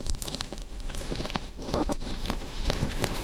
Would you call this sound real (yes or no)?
no